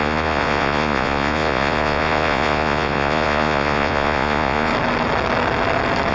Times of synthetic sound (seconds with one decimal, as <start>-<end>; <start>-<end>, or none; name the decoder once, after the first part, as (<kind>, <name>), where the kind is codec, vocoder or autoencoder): 0.0-4.7 (vocoder, Vocos)